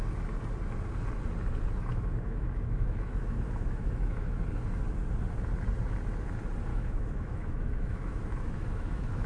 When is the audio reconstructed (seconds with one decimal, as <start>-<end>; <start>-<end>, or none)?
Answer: 1.9-4.4; 6.7-9.3